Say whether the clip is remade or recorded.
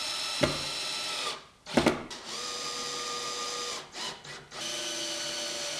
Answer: recorded